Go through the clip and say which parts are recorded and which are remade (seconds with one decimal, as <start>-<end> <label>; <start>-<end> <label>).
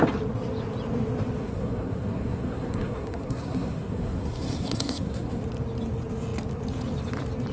0.0-1.4 recorded; 1.4-5.4 remade; 5.4-7.5 recorded